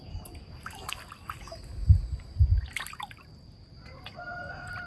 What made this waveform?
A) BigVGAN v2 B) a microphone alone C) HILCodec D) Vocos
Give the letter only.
B